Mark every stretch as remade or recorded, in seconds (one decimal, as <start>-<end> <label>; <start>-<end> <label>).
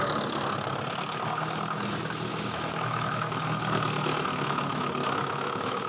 0.0-2.3 recorded; 2.3-5.9 remade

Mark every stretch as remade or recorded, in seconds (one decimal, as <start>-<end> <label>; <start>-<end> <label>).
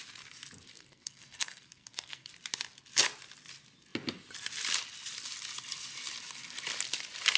0.0-0.7 recorded; 0.7-2.3 remade; 2.3-7.4 recorded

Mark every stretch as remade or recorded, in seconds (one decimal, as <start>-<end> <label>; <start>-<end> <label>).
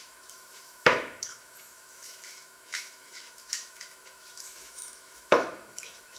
0.0-6.2 remade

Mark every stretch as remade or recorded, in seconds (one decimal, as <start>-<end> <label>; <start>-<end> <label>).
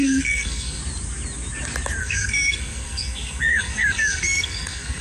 0.0-0.8 remade; 0.8-2.0 recorded; 2.0-5.0 remade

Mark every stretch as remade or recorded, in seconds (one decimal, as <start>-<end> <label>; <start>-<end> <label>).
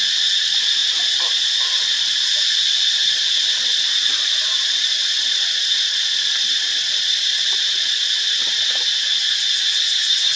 0.0-10.4 recorded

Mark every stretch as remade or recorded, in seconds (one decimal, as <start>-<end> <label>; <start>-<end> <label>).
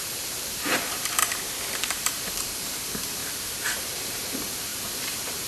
0.0-1.2 remade; 1.2-2.0 recorded; 2.0-3.2 remade; 3.2-3.8 recorded; 3.8-5.5 remade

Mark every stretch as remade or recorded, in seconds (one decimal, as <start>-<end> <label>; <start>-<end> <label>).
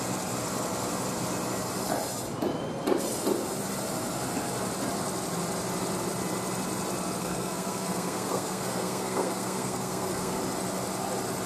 0.0-7.2 recorded; 7.2-10.4 remade; 10.4-11.5 recorded